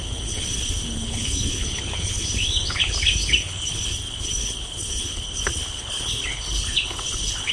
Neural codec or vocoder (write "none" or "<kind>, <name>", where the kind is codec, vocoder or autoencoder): codec, HILCodec